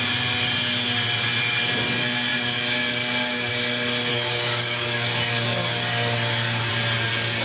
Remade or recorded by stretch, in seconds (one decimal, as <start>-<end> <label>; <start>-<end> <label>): 0.0-4.1 recorded; 4.1-6.7 remade; 6.7-7.4 recorded